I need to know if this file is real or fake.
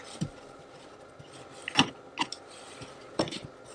real